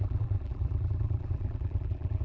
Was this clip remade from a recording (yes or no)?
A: yes